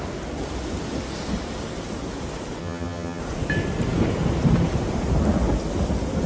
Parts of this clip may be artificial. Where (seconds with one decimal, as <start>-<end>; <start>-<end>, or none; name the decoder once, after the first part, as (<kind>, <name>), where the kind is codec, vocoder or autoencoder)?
2.6-3.2 (vocoder, HiFi-GAN)